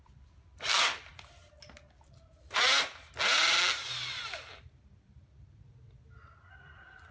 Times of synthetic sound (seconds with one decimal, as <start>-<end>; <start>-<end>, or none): 0.0-1.1; 4.5-7.1